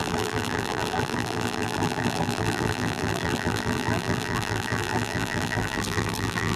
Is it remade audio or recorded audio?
remade